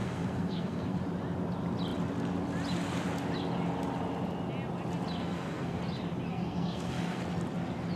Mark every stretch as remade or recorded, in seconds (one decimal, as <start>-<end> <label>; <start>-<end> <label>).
0.0-1.0 remade; 1.0-5.2 recorded; 5.2-5.8 remade; 5.8-6.3 recorded; 6.3-7.2 remade; 7.2-8.0 recorded